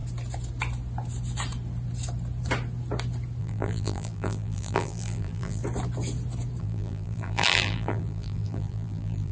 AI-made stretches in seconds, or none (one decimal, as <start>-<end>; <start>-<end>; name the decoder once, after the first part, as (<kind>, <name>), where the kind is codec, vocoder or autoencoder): 3.4-5.6 (vocoder, BigVGAN v2); 6.6-9.3